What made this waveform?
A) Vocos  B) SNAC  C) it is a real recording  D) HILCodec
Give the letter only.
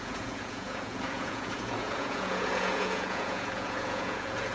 A